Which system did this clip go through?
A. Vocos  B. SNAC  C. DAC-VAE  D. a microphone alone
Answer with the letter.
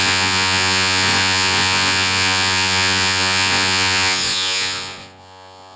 A